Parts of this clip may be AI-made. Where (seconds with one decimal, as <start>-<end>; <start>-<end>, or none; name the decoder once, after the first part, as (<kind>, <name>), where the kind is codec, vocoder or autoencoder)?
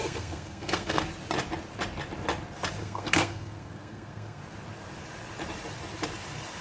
0.0-1.0 (codec, SNAC); 2.8-4.4